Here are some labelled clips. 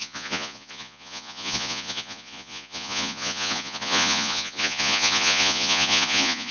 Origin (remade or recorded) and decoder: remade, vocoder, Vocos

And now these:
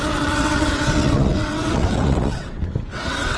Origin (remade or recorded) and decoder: remade, vocoder, WaveNeXt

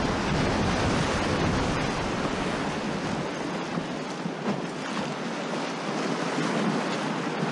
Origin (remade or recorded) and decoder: recorded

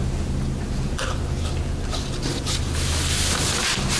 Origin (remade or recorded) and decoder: recorded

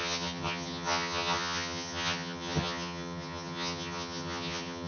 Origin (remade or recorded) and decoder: remade, vocoder, HiFi-GAN